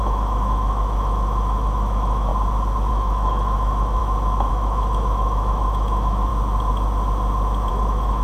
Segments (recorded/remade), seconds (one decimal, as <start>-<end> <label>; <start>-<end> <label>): 0.0-2.3 remade; 2.3-2.9 recorded; 2.9-4.0 remade; 4.0-4.5 recorded; 4.5-6.3 remade; 6.3-7.7 recorded; 7.7-8.2 remade